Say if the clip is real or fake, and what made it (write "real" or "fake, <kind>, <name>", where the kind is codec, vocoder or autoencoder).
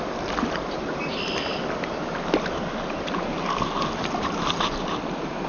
real